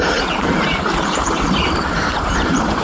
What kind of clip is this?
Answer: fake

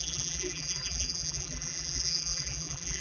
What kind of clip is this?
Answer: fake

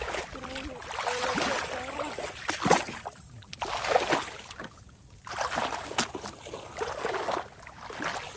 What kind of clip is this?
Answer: real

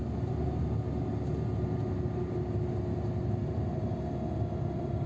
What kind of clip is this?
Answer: real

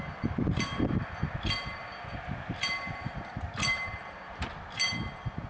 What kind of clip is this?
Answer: real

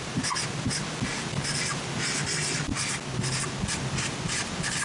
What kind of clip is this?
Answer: real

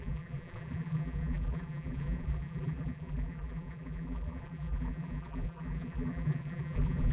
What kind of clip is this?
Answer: fake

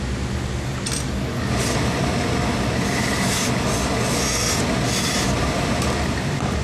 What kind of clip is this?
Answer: real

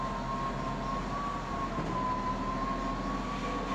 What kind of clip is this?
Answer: real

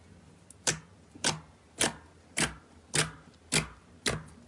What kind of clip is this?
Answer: real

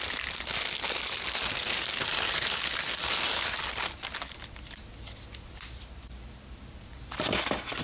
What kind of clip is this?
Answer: real